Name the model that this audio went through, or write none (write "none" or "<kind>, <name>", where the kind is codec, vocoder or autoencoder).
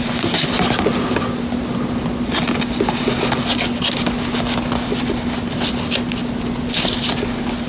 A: none